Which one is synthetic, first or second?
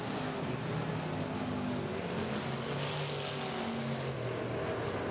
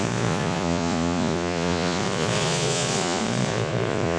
second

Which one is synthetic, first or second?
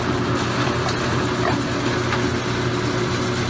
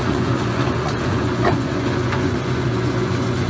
second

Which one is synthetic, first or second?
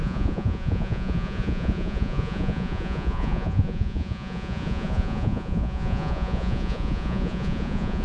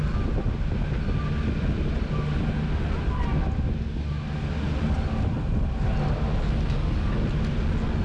first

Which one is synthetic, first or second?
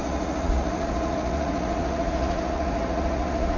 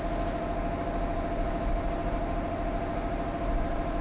first